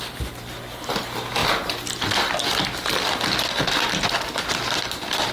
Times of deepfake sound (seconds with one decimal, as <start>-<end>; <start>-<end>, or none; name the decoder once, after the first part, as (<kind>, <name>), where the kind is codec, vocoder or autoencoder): none